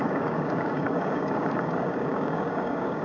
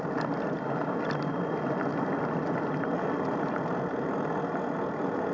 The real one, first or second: second